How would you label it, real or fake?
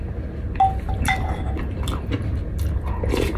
real